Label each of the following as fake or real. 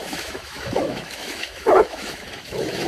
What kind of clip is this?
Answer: fake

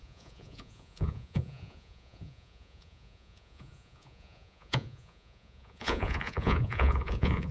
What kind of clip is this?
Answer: fake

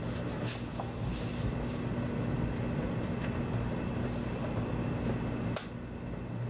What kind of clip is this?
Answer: real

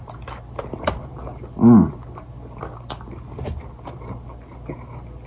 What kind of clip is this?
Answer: real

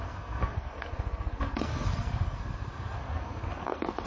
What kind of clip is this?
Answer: fake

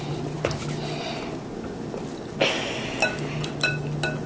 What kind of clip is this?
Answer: real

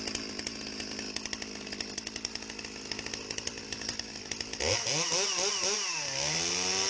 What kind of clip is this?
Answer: real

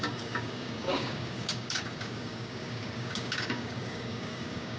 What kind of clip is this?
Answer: fake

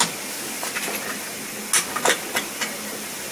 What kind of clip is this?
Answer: real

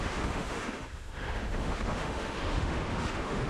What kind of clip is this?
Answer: fake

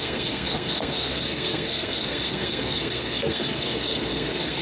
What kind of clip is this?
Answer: fake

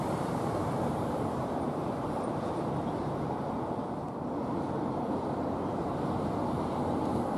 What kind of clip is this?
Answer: fake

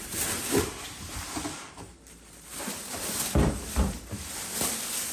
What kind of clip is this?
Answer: fake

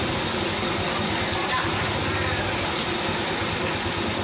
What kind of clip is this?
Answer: real